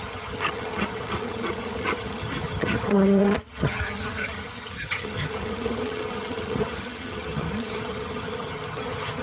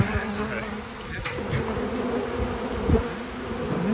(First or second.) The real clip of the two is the second